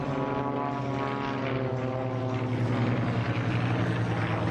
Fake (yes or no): no